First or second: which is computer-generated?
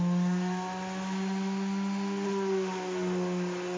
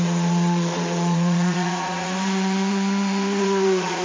second